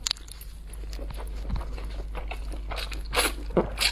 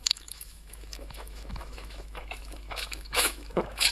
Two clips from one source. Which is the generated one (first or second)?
second